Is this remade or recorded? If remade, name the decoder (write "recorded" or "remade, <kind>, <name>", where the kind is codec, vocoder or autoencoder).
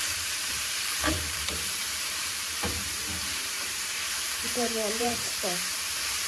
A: remade, vocoder, BigVGAN v2